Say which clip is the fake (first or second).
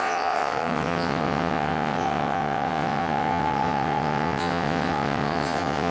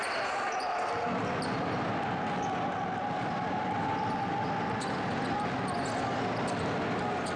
first